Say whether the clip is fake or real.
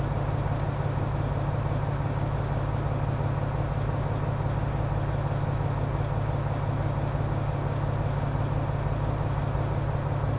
real